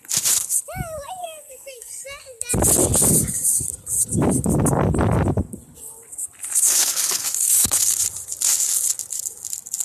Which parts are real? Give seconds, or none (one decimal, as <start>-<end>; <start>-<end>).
0.0-1.2; 1.9-6.4; 8.0-9.8